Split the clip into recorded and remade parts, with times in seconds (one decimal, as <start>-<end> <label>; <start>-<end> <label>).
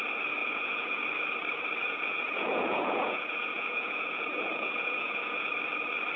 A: 0.0-0.4 recorded; 0.4-1.0 remade; 1.0-1.8 recorded; 1.8-5.5 remade; 5.5-6.2 recorded